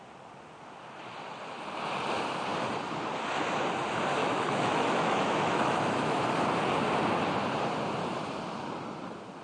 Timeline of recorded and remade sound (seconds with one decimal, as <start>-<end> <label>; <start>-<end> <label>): 0.0-4.2 recorded; 4.2-6.2 remade; 6.2-9.4 recorded